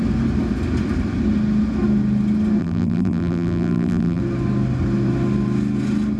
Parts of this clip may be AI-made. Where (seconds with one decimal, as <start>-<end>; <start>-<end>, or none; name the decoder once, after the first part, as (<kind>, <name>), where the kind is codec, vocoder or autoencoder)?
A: 2.6-4.2 (vocoder, BigVGAN v2)